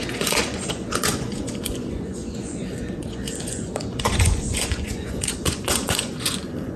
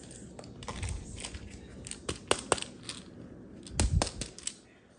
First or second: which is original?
second